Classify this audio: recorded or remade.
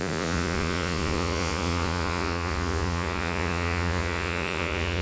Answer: remade